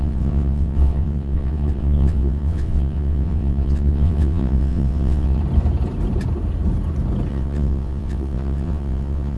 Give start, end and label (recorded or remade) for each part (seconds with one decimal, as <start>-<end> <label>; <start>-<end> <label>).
0.0-5.4 remade; 5.4-7.3 recorded; 7.3-9.4 remade